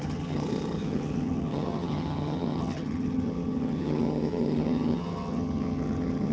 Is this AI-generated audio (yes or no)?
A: yes